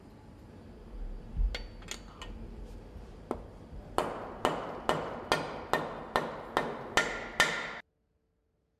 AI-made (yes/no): no